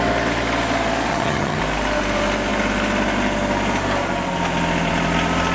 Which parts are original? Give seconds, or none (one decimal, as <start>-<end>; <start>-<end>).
0.0-1.1; 1.6-5.5